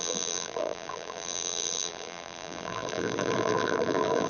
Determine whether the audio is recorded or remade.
remade